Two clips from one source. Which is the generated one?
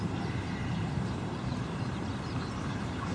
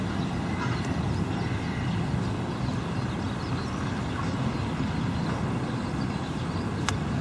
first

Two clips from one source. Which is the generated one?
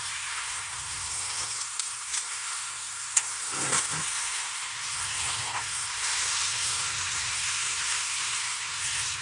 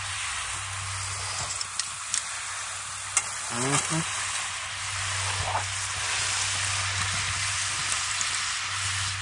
first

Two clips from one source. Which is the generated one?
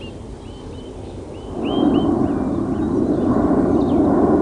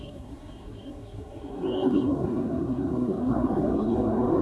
second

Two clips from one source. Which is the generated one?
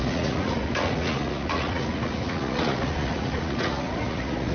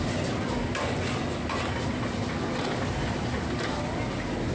first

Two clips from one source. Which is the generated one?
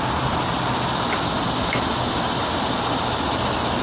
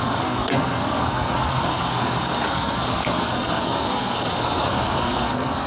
second